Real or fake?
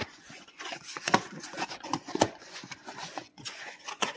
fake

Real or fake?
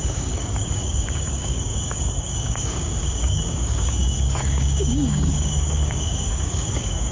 fake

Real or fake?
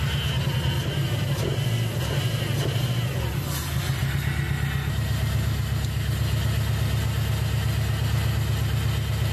real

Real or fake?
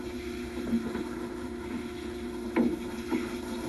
real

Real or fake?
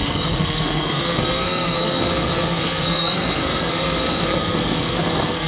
fake